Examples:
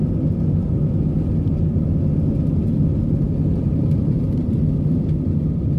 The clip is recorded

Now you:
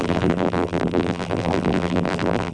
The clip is remade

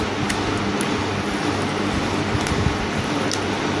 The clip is recorded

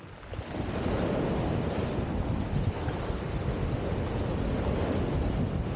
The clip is recorded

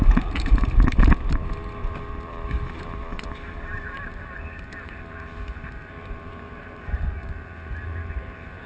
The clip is remade